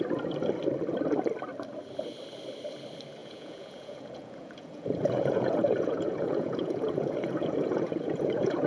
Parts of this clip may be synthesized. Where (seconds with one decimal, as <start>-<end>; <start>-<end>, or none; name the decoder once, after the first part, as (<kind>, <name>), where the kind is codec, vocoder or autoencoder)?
3.2-8.7 (vocoder, Vocos)